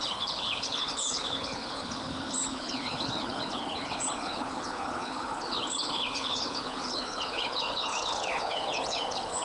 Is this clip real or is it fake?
fake